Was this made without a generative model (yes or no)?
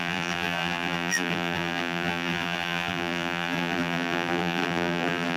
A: no